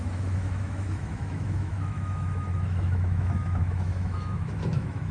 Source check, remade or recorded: remade